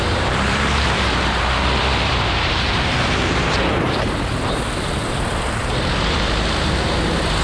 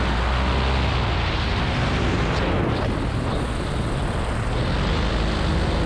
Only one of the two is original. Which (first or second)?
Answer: second